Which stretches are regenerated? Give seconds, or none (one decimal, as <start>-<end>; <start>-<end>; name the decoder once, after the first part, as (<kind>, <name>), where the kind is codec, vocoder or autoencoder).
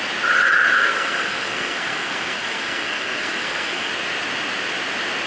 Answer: 0.7-3.9 (codec, SNAC)